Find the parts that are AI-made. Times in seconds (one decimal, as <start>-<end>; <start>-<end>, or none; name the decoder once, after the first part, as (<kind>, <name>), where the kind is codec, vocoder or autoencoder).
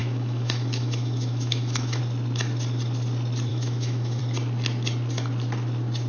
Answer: 0.0-2.0 (autoencoder, DAC-VAE); 3.5-4.2